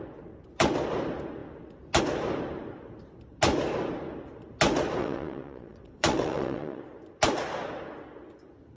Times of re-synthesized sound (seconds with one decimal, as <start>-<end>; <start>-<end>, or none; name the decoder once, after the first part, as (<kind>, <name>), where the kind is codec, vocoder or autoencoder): 5.0-6.8 (vocoder, WaveNeXt)